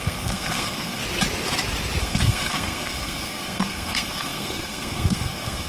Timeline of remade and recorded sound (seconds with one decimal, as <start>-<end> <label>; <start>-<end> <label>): 0.0-1.0 remade; 1.0-2.0 recorded; 2.0-5.7 remade